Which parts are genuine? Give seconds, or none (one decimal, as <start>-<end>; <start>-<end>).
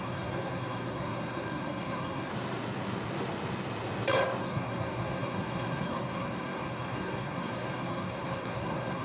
2.3-4.4